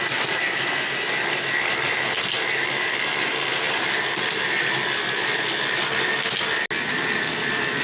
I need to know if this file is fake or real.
real